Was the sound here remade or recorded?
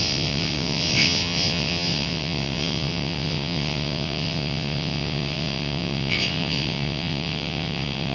remade